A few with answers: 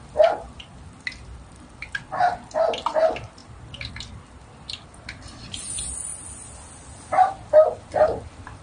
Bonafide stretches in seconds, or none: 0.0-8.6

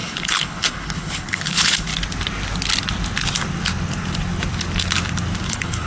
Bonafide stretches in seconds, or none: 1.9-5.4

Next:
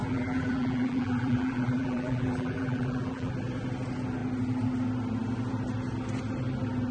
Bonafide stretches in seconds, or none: 3.3-6.9

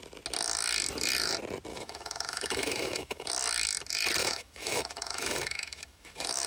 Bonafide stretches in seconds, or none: 0.0-1.7; 3.3-4.2